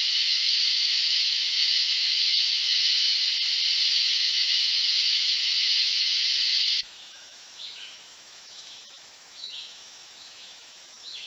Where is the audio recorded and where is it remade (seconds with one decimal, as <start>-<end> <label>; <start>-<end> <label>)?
0.0-3.3 remade; 3.3-3.9 recorded; 3.9-11.3 remade